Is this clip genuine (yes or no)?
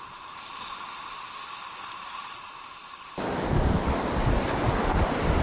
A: yes